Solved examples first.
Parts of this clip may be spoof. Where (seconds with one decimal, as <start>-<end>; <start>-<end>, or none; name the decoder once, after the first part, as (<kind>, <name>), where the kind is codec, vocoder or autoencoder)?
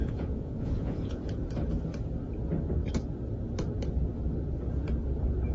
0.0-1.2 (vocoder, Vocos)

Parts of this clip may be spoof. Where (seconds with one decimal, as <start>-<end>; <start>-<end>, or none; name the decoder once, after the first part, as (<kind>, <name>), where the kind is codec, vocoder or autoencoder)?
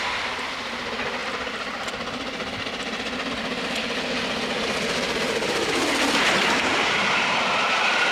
1.2-3.3 (vocoder, BigVGAN v2)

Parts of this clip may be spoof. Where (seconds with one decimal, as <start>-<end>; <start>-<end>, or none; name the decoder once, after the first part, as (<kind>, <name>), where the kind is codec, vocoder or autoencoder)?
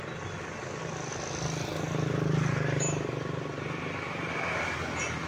none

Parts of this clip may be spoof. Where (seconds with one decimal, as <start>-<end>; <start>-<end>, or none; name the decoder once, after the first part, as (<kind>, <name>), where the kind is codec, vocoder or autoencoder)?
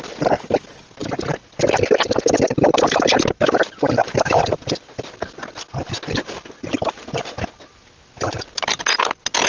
none